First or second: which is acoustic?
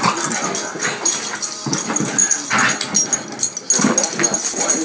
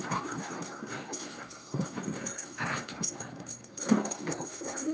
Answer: first